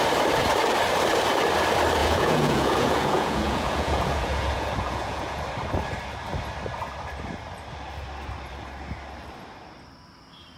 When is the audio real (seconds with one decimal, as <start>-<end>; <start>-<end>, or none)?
0.0-2.0; 5.4-10.6